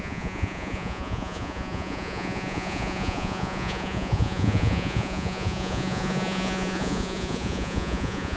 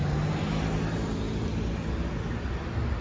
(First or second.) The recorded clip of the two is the second